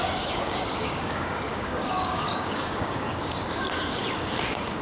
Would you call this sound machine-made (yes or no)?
yes